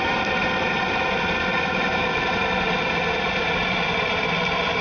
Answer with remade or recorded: recorded